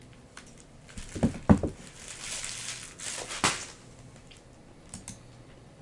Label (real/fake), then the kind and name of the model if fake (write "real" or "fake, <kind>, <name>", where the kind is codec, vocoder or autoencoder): real